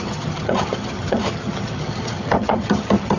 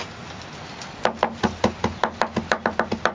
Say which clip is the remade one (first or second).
first